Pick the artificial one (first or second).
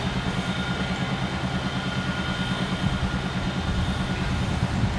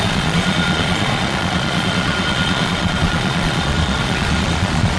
second